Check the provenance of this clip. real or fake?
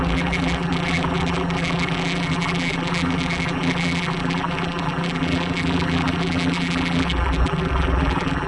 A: fake